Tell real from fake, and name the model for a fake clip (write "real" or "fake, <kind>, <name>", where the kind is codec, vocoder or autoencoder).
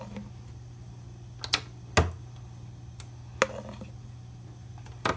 real